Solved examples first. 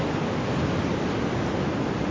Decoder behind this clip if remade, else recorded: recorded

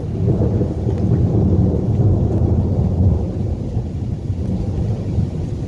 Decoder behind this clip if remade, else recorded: recorded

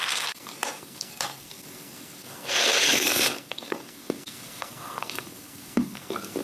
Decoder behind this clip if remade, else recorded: remade, codec, SNAC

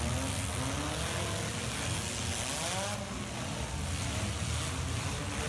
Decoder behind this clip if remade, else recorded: recorded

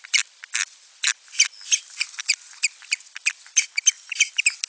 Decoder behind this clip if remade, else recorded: recorded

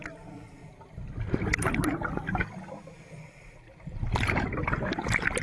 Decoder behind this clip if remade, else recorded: recorded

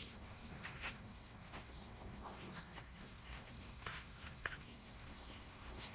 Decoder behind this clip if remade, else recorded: remade, codec, SNAC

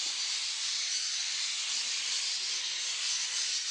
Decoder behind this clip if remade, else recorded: recorded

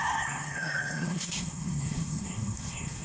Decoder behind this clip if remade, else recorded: remade, codec, SNAC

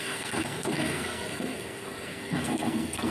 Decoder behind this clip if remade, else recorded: remade, codec, SNAC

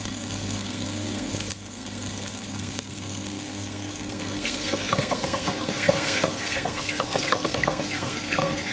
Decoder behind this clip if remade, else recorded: remade, codec, SNAC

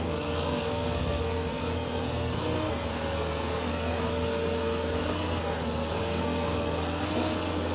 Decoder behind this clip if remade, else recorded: remade, codec, SNAC